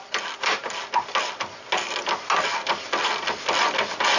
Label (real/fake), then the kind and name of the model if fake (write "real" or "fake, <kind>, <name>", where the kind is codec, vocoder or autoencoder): real